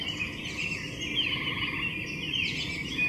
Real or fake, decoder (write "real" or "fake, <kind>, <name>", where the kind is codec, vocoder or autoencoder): real